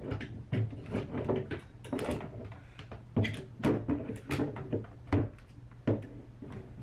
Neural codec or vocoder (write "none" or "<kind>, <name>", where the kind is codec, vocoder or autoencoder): none